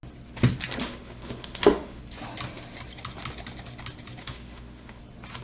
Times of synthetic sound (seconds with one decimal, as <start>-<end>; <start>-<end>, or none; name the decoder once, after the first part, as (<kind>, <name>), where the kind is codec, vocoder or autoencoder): 0.8-2.0 (autoencoder, DAC-VAE); 4.2-5.0